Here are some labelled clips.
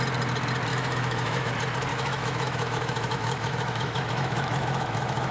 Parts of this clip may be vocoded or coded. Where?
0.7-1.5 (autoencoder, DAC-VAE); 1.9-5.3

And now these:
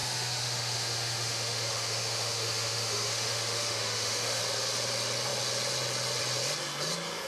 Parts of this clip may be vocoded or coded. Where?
0.0-4.4 (autoencoder, DAC-VAE)

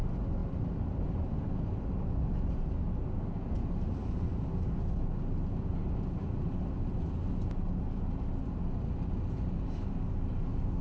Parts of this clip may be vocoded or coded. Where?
none

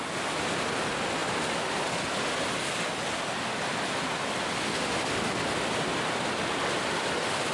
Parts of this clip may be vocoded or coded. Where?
none

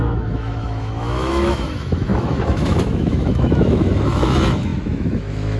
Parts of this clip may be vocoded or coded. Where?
0.0-5.6 (autoencoder, DAC-VAE)

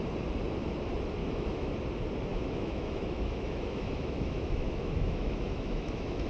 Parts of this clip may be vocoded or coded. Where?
1.2-1.7 (autoencoder, DAC-VAE); 2.3-6.3

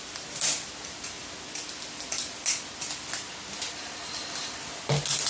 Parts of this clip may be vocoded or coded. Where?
none

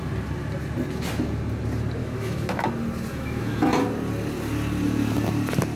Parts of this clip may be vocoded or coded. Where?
2.0-2.7 (autoencoder, DAC-VAE); 3.1-3.8